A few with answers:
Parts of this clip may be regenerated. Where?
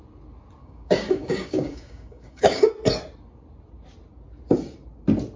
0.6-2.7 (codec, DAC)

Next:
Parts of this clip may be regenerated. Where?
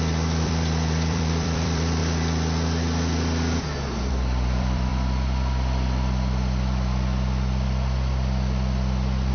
0.0-2.0 (vocoder, BigVGAN v2); 4.1-4.9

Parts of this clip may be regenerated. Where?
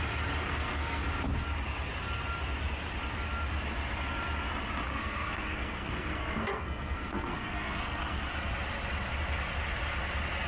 0.4-1.0 (codec, SNAC); 4.9-8.2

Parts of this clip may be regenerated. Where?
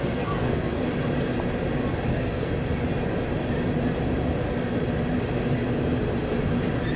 0.0-0.8 (codec, SNAC); 2.1-2.5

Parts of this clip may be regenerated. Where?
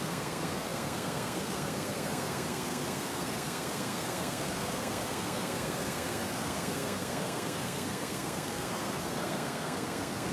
0.0-10.3 (codec, SNAC)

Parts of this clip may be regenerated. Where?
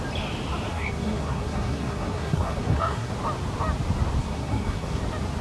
0.7-3.1 (codec, SNAC); 4.2-5.0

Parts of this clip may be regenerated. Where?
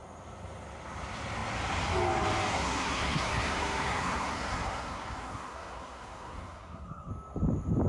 2.5-7.1 (codec, SNAC)